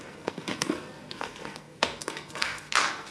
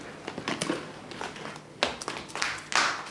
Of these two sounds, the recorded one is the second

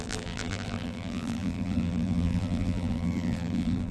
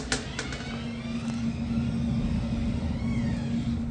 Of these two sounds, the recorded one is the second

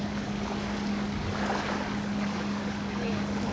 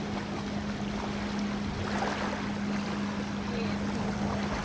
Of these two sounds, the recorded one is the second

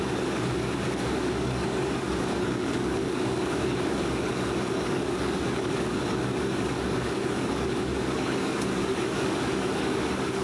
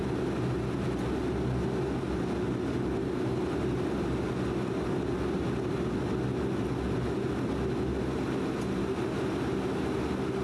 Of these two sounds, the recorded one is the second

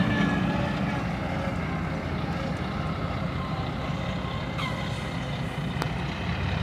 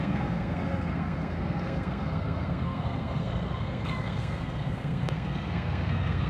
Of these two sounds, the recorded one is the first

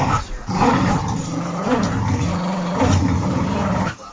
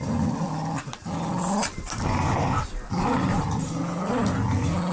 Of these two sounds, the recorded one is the second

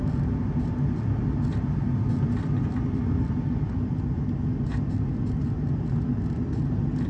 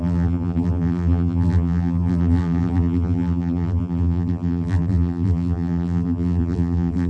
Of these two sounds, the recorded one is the first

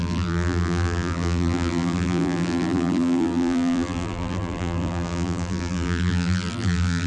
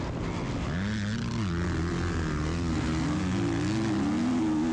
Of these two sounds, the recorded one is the second